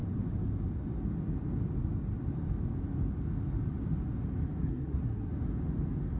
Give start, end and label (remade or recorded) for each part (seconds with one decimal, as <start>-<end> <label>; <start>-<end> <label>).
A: 0.0-4.6 recorded; 4.6-5.3 remade; 5.3-6.2 recorded